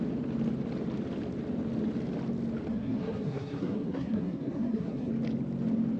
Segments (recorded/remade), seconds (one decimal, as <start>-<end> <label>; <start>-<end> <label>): 0.0-2.7 recorded; 2.7-5.1 remade; 5.1-6.0 recorded